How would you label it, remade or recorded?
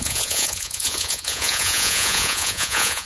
remade